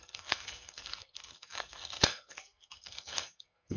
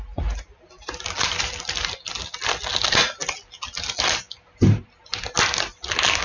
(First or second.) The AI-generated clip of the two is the first